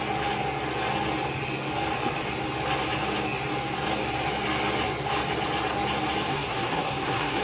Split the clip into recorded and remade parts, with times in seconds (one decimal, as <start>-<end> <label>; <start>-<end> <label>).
0.0-6.3 recorded; 6.3-7.4 remade